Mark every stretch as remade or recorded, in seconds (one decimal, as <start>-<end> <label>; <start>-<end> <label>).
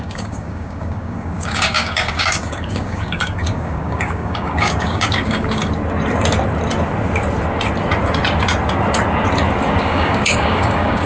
0.0-5.6 remade; 5.6-9.8 recorded; 9.8-11.1 remade